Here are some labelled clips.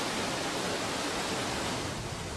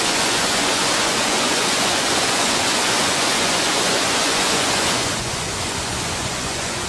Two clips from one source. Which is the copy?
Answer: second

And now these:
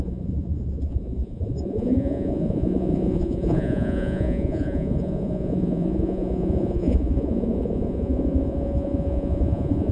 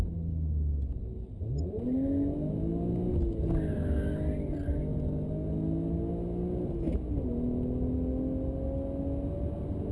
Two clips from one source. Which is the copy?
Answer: first